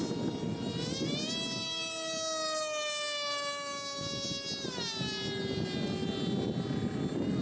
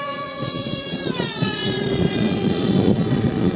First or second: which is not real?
second